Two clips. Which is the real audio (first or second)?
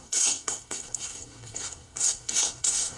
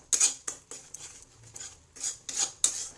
second